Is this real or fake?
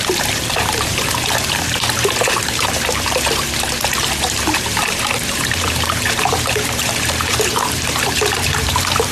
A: fake